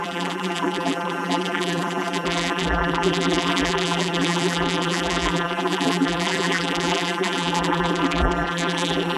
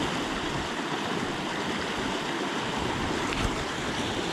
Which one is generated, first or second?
first